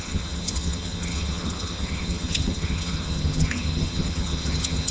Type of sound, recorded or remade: remade